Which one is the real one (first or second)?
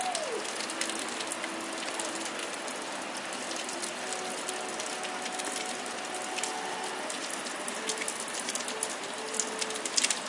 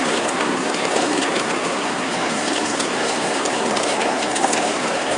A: first